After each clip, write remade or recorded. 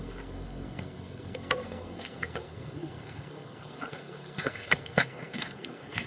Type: remade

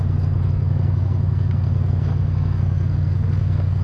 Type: remade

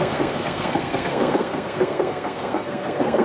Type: remade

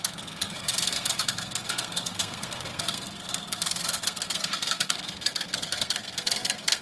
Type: remade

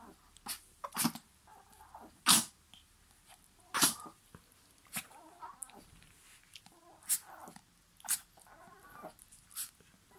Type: recorded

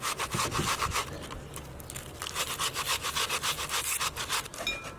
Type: recorded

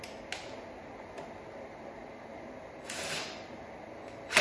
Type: recorded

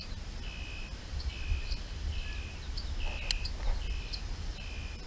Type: recorded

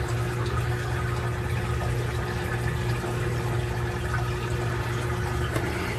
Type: recorded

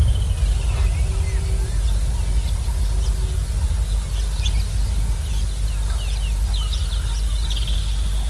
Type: recorded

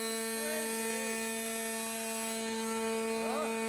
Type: recorded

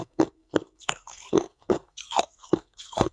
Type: remade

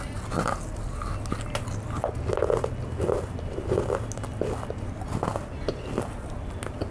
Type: recorded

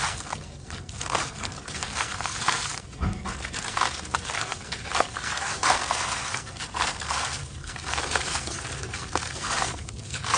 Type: remade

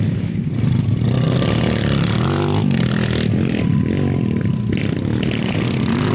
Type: recorded